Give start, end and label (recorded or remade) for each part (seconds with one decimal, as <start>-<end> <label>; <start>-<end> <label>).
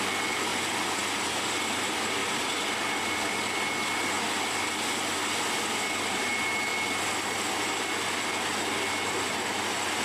0.0-0.5 recorded; 0.5-1.3 remade; 1.3-10.0 recorded